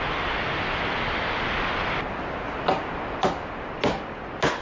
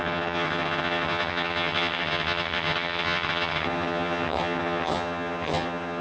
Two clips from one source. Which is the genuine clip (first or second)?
first